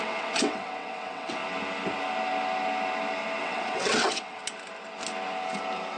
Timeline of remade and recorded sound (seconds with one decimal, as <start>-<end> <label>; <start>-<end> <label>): 0.0-1.4 remade; 1.4-3.4 recorded; 3.4-4.4 remade; 4.4-6.0 recorded